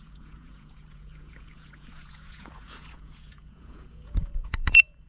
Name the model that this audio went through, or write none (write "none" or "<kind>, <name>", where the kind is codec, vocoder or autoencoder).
vocoder, Vocos